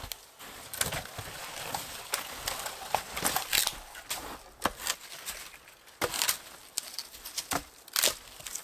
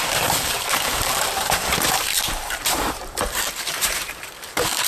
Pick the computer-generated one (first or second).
second